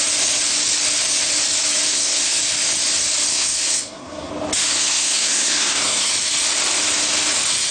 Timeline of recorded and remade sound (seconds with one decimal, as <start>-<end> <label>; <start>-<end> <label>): 0.0-1.9 recorded; 1.9-2.4 remade; 2.4-3.3 recorded; 3.3-4.3 remade; 4.3-4.7 recorded; 4.7-6.1 remade; 6.1-7.7 recorded